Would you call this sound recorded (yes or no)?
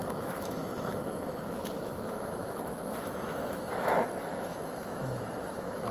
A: no